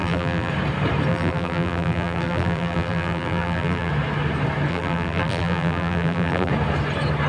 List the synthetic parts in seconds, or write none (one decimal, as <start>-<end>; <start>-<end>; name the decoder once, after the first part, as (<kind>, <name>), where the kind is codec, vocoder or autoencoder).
0.0-0.5 (vocoder, BigVGAN v2); 1.1-3.9; 4.7-6.5